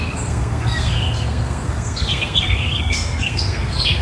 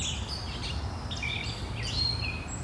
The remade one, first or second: first